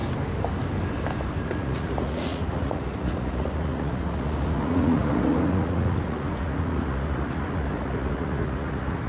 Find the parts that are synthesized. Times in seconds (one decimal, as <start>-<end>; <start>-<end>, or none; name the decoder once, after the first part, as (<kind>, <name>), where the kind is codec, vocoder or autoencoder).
1.4-9.1 (vocoder, Vocos)